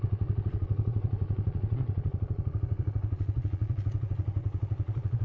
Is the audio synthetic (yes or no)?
yes